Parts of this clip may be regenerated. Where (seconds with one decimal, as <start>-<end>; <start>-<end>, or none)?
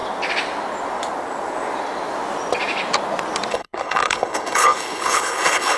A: 3.5-5.8